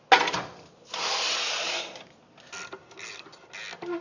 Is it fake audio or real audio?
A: real